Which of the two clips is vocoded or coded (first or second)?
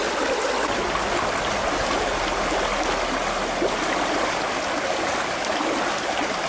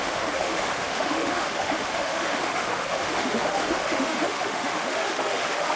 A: second